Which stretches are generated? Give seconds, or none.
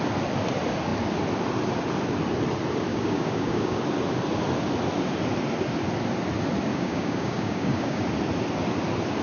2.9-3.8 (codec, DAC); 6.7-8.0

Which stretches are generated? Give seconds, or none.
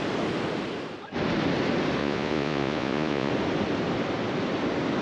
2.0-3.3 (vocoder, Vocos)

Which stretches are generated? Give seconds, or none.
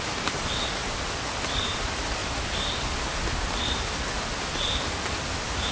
0.0-2.2 (vocoder, BigVGAN v2); 5.1-5.7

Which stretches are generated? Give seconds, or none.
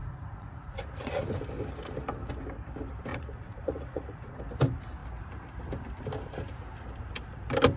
0.0-1.2 (vocoder, Vocos); 3.1-4.4